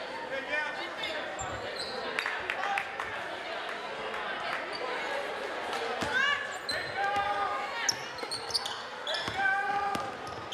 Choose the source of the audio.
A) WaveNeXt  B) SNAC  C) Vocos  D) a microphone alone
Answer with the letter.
D